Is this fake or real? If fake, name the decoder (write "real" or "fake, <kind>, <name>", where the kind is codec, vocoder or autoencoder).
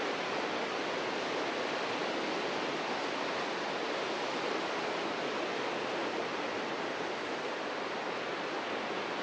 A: real